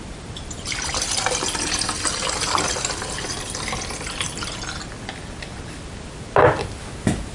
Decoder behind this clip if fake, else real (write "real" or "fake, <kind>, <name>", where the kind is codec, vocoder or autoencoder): real